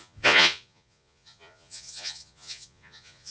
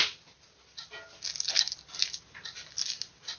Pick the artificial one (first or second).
first